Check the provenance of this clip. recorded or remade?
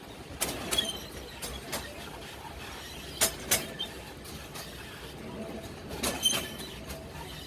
recorded